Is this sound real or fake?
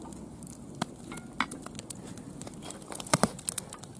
real